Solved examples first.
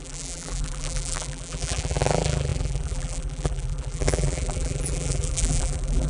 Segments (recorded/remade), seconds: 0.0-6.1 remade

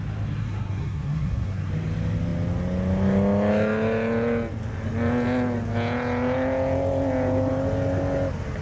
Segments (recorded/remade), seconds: 0.0-0.4 recorded; 0.4-1.7 remade; 1.7-8.6 recorded

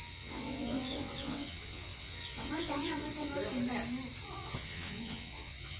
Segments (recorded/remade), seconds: 0.0-3.3 remade; 3.3-4.2 recorded; 4.2-5.8 remade

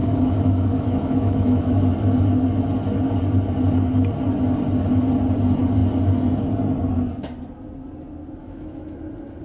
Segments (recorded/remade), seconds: 0.0-1.9 remade; 1.9-8.4 recorded; 8.4-9.0 remade; 9.0-9.4 recorded

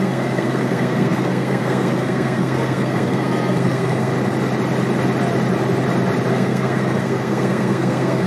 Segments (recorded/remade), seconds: 0.0-4.1 remade; 4.1-6.3 recorded; 6.3-8.3 remade

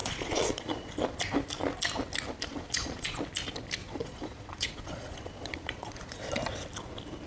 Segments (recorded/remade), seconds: 0.0-0.9 remade; 0.9-2.5 recorded; 2.5-3.2 remade; 3.2-3.8 recorded; 3.8-6.4 remade; 6.4-7.3 recorded

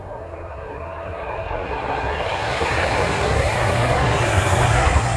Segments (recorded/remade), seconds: 0.0-5.2 remade

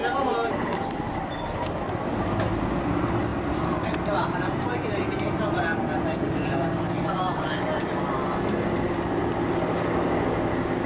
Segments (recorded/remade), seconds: 0.0-10.9 recorded